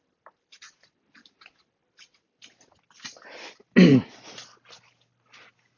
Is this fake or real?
real